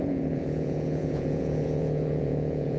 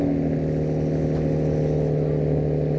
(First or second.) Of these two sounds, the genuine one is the second